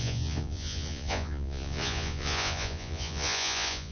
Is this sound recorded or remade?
remade